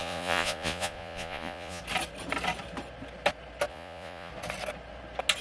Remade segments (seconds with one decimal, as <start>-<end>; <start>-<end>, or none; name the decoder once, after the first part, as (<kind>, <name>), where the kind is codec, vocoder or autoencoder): 0.0-1.8 (vocoder, Vocos); 3.7-4.3